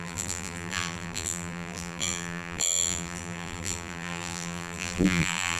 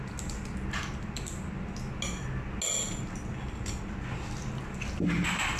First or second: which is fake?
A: first